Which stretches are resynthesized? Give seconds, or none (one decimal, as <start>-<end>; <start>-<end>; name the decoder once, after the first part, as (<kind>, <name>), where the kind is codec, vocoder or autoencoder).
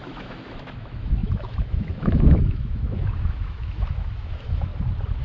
0.0-4.7 (autoencoder, DAC-VAE)